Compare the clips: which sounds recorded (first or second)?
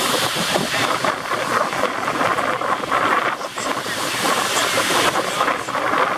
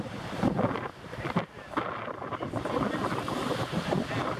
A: second